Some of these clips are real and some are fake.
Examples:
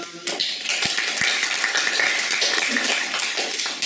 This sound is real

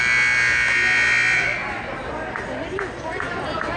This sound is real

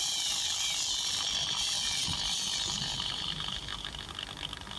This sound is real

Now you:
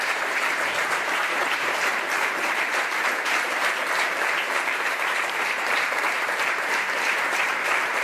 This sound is fake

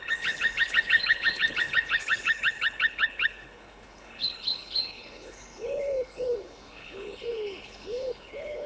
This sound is fake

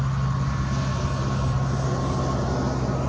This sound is real